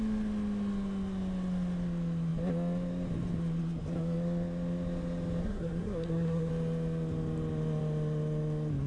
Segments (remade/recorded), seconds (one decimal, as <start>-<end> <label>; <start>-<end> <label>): 0.0-5.4 recorded; 5.4-6.5 remade; 6.5-8.9 recorded